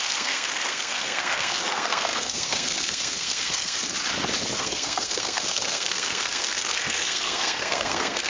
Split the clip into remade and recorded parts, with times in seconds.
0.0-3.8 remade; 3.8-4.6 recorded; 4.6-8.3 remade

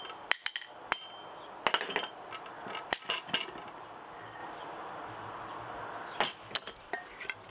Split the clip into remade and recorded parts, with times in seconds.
0.0-7.5 recorded